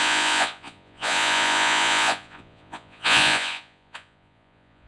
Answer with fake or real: fake